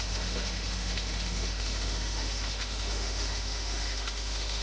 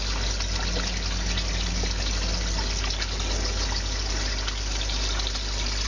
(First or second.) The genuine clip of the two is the second